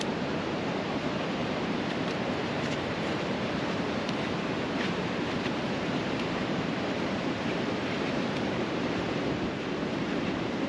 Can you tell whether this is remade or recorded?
remade